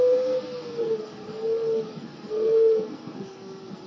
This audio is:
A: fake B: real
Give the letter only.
A